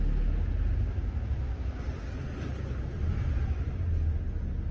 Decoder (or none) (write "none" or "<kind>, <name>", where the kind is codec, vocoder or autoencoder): none